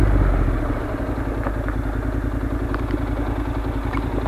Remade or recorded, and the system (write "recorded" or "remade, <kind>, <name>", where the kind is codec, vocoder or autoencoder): recorded